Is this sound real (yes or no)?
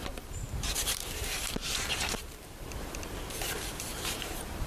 no